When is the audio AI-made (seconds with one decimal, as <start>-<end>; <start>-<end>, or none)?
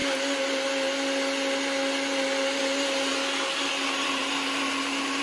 none